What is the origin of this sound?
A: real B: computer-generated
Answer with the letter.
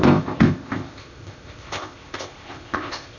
B